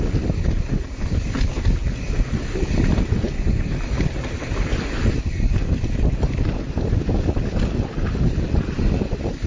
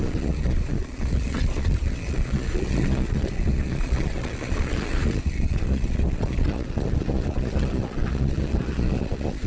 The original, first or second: first